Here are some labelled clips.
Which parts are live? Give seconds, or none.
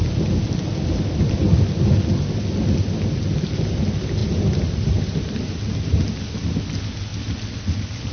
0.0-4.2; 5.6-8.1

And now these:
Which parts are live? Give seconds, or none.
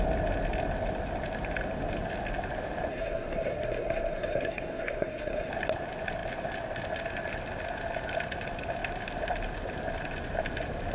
0.0-2.9; 5.5-10.9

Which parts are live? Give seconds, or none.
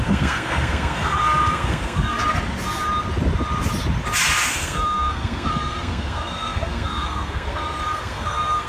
2.2-4.5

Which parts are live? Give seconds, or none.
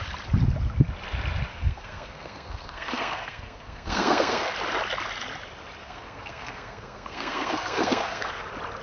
0.0-1.5; 4.5-5.8; 8.3-8.8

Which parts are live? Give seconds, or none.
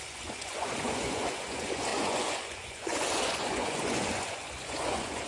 none